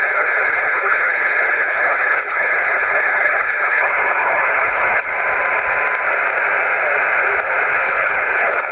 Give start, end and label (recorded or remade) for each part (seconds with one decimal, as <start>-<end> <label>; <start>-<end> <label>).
0.0-5.1 remade; 5.1-7.7 recorded; 7.7-8.7 remade